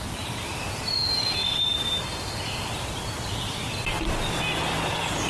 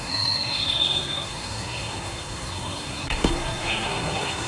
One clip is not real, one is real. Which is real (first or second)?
first